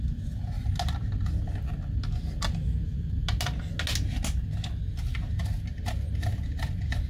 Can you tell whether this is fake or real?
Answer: real